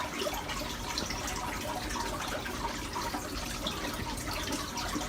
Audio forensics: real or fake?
real